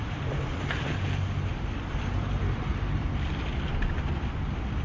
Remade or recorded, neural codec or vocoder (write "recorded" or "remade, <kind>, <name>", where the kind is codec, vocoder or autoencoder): remade, vocoder, BigVGAN v2